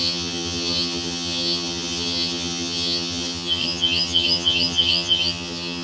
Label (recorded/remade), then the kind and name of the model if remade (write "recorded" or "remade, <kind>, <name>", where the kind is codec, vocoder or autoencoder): remade, vocoder, HiFi-GAN